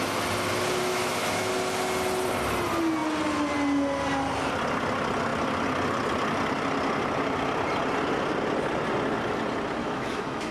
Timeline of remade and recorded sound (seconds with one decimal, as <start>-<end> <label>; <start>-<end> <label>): 0.0-0.9 recorded; 0.9-1.5 remade; 1.5-9.8 recorded; 9.8-10.5 remade